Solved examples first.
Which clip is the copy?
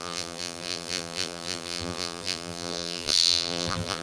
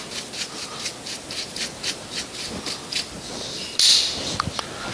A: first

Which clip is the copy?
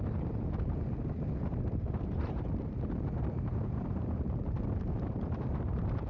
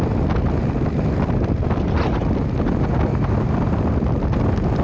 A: first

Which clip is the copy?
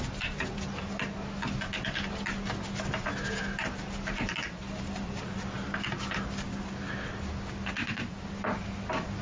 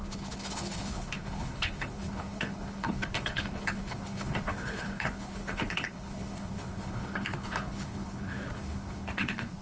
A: second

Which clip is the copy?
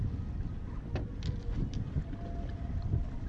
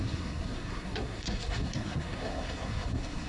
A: second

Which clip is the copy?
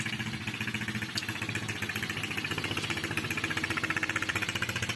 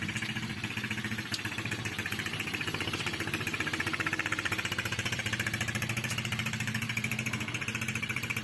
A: second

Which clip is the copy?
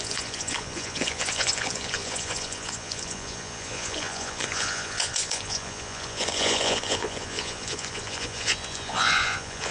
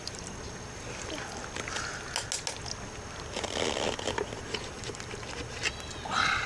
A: first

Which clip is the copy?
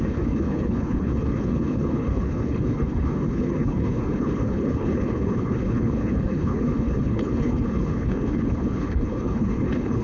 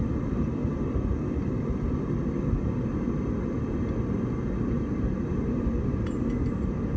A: first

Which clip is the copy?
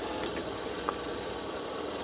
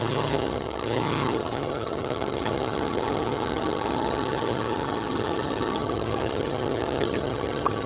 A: second